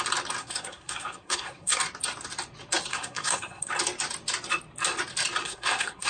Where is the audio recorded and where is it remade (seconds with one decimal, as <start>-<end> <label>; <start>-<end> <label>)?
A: 0.0-0.4 recorded; 0.4-1.8 remade; 1.8-2.9 recorded; 2.9-3.7 remade; 3.7-5.4 recorded; 5.4-6.1 remade